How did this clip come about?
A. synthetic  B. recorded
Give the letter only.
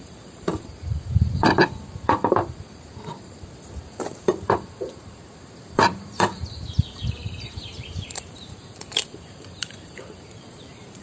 A